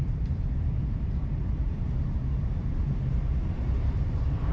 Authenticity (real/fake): fake